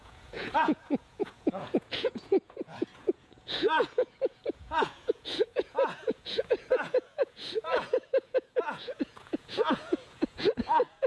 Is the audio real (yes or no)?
no